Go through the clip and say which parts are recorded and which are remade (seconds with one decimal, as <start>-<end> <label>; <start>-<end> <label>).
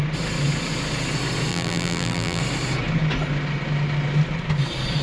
0.0-1.5 recorded; 1.5-2.4 remade; 2.4-5.0 recorded